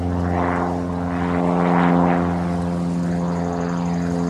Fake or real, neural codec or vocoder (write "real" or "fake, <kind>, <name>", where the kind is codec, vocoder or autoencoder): real